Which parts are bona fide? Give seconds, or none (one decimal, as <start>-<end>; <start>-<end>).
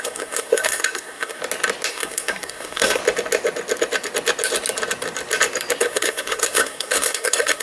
1.4-1.9; 3.0-5.8